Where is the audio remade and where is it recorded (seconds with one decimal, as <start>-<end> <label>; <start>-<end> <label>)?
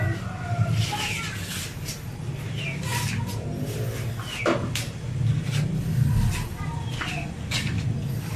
0.0-8.4 recorded